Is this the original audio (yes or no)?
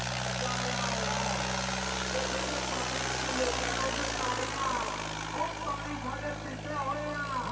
yes